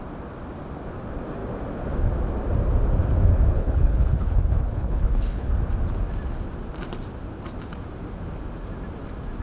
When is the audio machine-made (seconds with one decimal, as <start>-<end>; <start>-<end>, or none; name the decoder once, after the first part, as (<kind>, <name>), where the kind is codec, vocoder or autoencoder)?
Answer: 3.5-5.5 (codec, HILCodec)